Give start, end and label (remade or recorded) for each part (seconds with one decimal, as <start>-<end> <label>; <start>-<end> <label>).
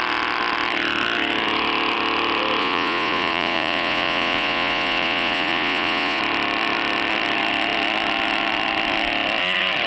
0.0-2.6 recorded; 2.6-6.2 remade; 6.2-9.9 recorded